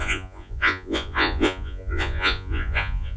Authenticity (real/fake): fake